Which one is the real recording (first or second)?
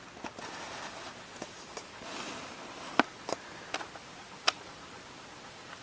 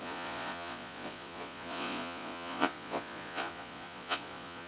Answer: first